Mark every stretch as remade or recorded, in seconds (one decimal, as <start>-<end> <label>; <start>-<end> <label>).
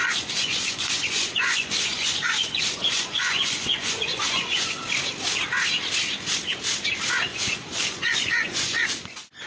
0.0-4.8 remade; 4.8-7.3 recorded; 7.3-8.9 remade; 8.9-9.5 recorded